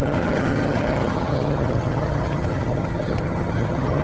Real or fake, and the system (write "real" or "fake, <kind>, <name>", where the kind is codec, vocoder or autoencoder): fake, vocoder, HiFi-GAN